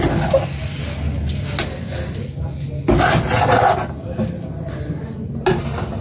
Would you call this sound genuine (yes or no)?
yes